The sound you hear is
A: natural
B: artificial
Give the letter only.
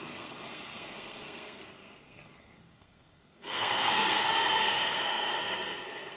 B